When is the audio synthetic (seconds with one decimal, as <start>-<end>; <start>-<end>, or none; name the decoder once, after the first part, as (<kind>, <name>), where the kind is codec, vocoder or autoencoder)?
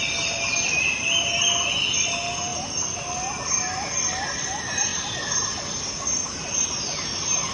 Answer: none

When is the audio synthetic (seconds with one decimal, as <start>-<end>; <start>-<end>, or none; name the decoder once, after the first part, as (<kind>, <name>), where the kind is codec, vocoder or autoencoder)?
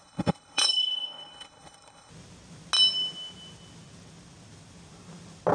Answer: 0.0-2.1 (codec, HILCodec)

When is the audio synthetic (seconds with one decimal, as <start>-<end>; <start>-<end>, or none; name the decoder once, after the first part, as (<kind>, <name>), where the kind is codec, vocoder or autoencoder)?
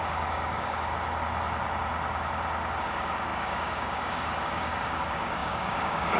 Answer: 0.0-0.9 (codec, DAC); 2.8-6.2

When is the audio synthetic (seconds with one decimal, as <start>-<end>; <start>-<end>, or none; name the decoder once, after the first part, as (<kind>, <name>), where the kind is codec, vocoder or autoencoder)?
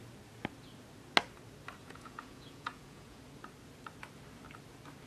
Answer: 1.8-3.2 (vocoder, Vocos)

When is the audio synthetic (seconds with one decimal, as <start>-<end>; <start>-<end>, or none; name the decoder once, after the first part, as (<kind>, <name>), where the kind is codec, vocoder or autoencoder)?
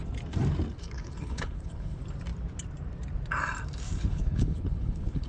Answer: 0.8-2.0 (codec, HILCodec); 4.1-5.3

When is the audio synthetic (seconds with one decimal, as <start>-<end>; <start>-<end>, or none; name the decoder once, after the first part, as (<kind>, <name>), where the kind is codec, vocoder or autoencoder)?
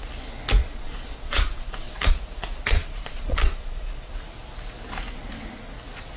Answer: 0.6-4.1 (vocoder, Vocos)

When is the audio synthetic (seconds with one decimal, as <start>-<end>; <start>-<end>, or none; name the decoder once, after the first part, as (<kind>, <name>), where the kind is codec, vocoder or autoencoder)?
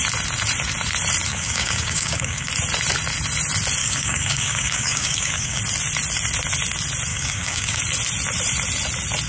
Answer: 1.3-2.5 (codec, DAC); 3.8-5.6; 7.1-7.8